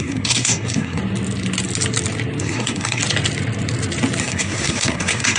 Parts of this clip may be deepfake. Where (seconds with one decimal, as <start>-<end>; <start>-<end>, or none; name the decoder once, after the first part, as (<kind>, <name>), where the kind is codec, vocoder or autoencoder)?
0.0-1.0 (codec, SNAC); 2.4-3.0; 4.2-5.4